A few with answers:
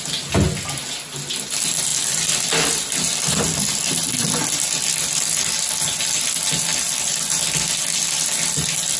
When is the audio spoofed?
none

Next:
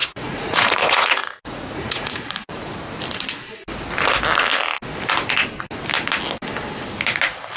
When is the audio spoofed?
0.0-2.8 (vocoder, Vocos)

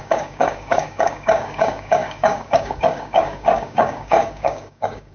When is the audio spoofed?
0.0-5.1 (codec, DAC)

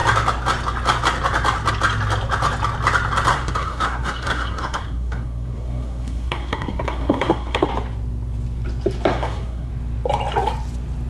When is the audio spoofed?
3.3-7.7 (codec, SNAC); 9.1-9.7

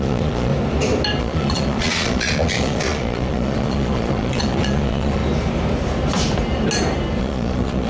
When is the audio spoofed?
0.0-0.5 (vocoder, Vocos); 1.2-5.2; 7.2-7.9

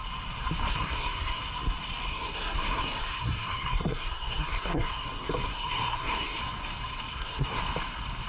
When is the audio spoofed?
0.7-1.4 (codec, SNAC); 2.1-6.4; 7.1-7.6

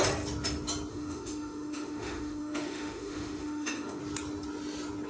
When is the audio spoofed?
0.9-4.0 (autoencoder, DAC-VAE)

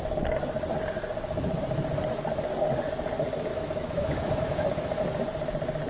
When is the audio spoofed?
3.5-5.0 (autoencoder, DAC-VAE)